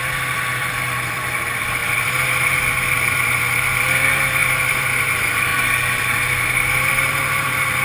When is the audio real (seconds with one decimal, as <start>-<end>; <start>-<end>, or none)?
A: 5.5-6.0